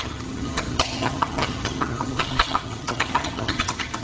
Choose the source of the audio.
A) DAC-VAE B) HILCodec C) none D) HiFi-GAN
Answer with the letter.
D